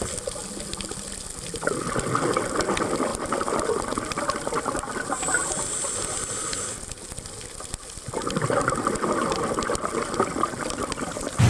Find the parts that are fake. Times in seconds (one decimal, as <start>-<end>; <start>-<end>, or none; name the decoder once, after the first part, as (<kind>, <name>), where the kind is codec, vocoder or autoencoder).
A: none